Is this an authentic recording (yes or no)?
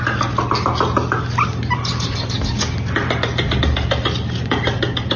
yes